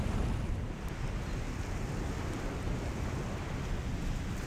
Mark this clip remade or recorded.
recorded